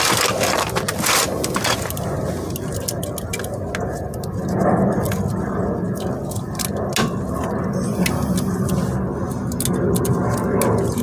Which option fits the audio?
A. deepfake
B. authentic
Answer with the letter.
B